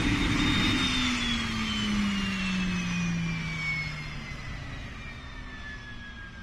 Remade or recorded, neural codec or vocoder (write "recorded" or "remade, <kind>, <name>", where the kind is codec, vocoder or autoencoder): recorded